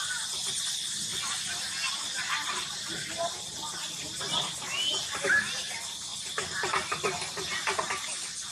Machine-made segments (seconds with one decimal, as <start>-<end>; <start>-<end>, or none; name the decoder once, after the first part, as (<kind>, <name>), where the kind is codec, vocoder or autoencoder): 6.1-6.8 (vocoder, BigVGAN v2)